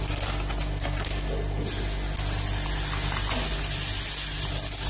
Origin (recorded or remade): recorded